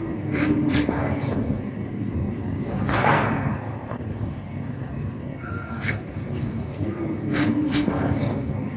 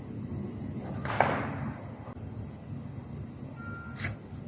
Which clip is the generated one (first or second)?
first